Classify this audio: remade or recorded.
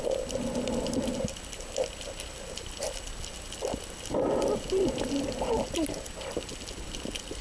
recorded